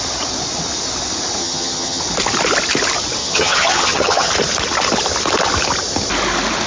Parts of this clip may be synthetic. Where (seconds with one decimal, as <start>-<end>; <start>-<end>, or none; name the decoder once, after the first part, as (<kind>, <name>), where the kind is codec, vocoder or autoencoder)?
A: 1.4-2.0 (vocoder, HiFi-GAN); 3.2-4.3